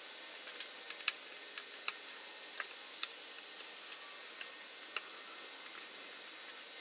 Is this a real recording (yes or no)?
yes